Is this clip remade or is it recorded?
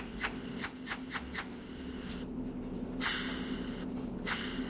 recorded